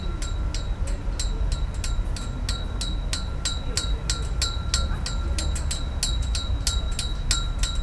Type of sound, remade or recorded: recorded